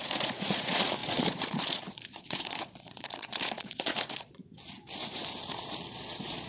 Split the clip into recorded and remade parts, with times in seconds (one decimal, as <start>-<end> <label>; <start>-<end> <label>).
0.0-4.4 remade; 4.4-5.5 recorded; 5.5-6.5 remade